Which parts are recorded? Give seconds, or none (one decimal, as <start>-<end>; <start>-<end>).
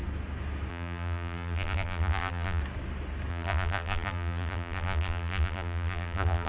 0.0-0.7; 2.6-3.3